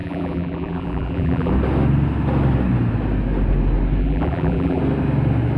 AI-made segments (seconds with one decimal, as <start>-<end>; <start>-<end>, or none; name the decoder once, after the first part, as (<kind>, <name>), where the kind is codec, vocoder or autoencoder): 0.0-1.5 (vocoder, BigVGAN v2); 4.0-4.8